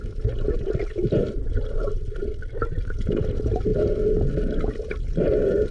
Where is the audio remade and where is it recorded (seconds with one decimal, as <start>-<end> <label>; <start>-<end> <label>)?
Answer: 0.0-5.7 recorded